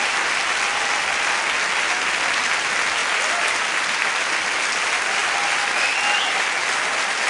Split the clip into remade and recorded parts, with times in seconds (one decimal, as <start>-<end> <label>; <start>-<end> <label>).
0.0-7.3 recorded